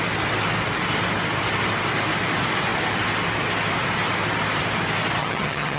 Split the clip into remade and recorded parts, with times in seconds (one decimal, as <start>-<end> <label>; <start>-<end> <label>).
0.0-5.2 recorded; 5.2-5.8 remade